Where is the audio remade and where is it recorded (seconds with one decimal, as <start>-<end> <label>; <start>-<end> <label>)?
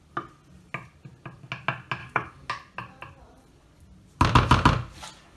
0.0-2.0 recorded; 2.0-2.5 remade; 2.5-5.4 recorded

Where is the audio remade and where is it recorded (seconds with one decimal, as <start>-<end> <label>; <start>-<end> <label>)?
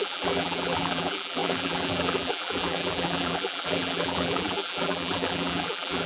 0.0-6.1 remade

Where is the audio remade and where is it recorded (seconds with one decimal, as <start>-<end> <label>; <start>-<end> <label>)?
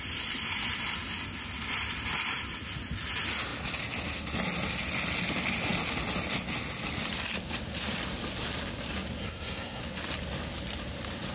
0.0-9.2 recorded; 9.2-9.8 remade; 9.8-11.3 recorded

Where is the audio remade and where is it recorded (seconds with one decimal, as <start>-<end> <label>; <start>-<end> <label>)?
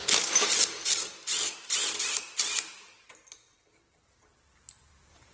0.0-5.3 recorded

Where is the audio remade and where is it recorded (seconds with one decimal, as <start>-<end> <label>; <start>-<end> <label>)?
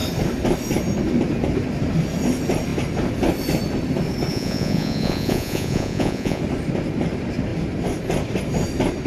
0.0-4.3 recorded; 4.3-6.4 remade; 6.4-9.1 recorded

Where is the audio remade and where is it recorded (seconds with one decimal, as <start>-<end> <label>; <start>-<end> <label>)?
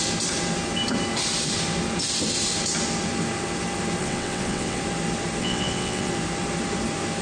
0.0-4.0 recorded; 4.0-4.8 remade; 4.8-5.4 recorded; 5.4-6.1 remade; 6.1-7.2 recorded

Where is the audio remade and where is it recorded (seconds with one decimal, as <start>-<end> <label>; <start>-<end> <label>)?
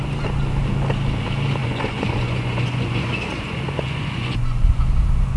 0.0-1.6 recorded; 1.6-4.8 remade; 4.8-5.4 recorded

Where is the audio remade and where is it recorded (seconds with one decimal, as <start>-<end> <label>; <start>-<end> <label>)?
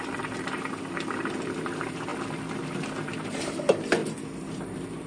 0.0-2.1 remade; 2.1-3.2 recorded; 3.2-4.0 remade; 4.0-4.5 recorded; 4.5-5.1 remade